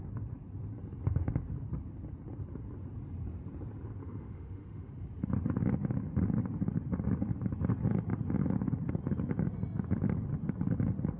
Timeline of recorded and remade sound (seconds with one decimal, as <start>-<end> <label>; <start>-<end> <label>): 0.0-4.0 recorded; 4.0-4.9 remade; 4.9-11.2 recorded